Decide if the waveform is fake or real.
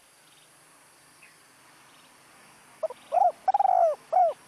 real